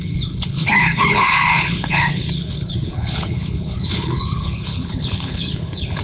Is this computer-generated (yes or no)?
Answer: yes